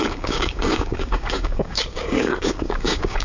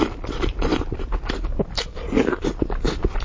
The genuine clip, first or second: second